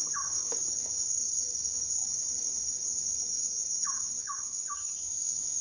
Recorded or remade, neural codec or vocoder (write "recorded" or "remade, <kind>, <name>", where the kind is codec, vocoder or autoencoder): remade, codec, DAC